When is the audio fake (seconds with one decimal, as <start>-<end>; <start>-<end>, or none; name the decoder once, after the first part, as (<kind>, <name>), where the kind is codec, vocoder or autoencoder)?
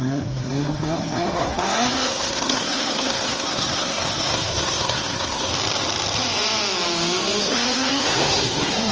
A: 0.0-5.5 (codec, SNAC); 7.4-8.9